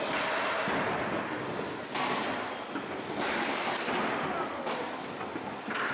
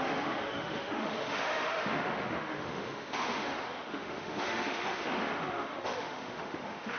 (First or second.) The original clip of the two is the first